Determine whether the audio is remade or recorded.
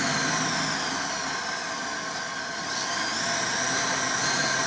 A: recorded